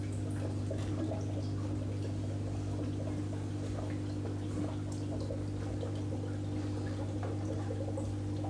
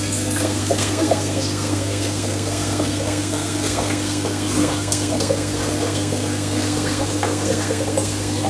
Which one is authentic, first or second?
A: first